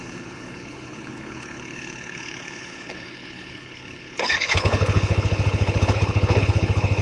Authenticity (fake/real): fake